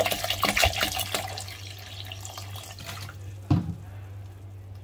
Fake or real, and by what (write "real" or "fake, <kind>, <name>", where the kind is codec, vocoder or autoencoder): real